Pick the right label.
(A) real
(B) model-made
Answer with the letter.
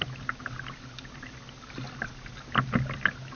A